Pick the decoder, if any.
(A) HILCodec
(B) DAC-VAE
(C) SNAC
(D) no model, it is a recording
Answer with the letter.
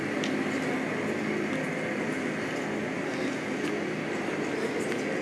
D